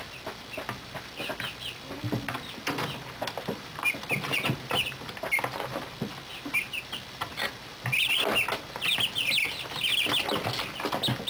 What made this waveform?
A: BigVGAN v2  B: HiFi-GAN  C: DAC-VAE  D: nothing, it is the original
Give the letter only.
D